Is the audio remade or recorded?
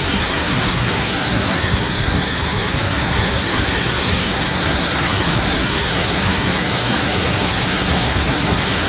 remade